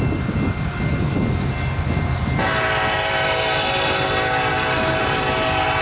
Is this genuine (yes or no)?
yes